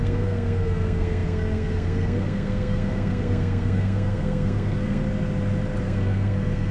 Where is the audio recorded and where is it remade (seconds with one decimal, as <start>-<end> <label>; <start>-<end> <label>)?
0.0-5.0 remade; 5.0-5.8 recorded; 5.8-6.7 remade